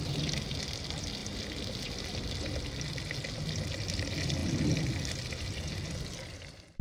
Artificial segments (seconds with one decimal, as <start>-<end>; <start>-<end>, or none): none